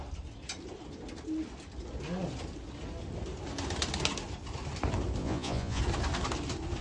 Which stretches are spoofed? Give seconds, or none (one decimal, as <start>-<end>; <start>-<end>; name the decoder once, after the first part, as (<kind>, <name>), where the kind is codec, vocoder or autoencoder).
5.2-5.8 (vocoder, Vocos)